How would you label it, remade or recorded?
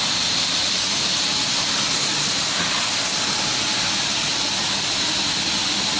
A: recorded